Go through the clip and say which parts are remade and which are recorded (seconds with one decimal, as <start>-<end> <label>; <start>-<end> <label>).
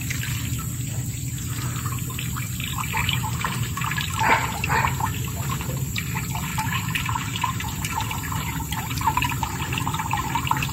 0.0-3.0 recorded; 3.0-5.4 remade; 5.4-6.5 recorded; 6.5-9.2 remade; 9.2-10.7 recorded